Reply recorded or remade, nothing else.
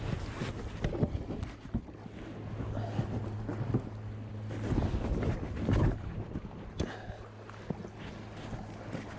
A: recorded